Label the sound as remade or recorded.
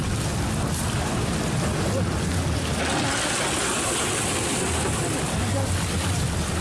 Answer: recorded